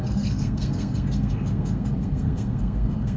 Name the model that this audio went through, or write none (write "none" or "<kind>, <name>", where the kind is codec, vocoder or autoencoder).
codec, SNAC